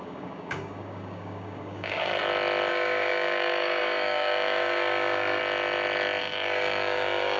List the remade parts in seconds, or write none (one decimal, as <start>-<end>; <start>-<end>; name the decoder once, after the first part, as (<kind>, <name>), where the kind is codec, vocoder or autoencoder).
0.0-2.1 (codec, DAC); 2.7-5.4; 6.2-7.4